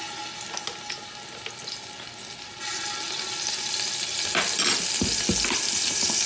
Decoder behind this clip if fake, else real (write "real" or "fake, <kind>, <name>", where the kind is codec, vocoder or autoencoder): real